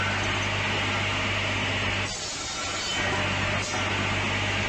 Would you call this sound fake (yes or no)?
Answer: no